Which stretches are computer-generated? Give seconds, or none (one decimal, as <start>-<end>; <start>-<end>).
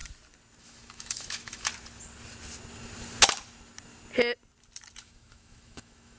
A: 0.6-1.7; 5.0-6.2